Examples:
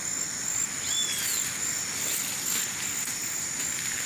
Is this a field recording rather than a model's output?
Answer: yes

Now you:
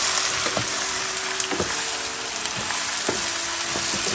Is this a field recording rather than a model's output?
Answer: yes